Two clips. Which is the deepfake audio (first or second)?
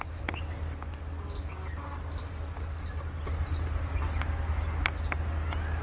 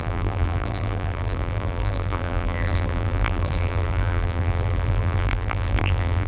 second